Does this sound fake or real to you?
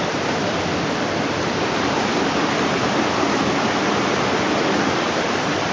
fake